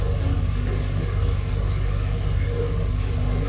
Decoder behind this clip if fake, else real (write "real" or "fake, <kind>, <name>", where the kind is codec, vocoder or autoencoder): fake, codec, DAC